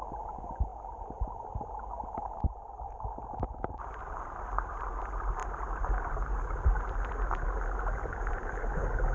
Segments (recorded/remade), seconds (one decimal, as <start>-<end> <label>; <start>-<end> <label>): 0.0-9.1 recorded